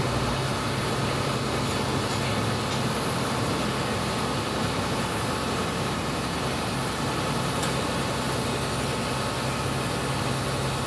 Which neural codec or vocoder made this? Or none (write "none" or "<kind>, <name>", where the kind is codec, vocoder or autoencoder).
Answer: none